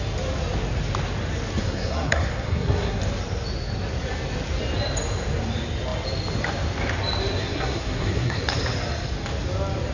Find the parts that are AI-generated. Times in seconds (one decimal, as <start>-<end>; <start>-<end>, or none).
1.6-3.0; 7.4-8.4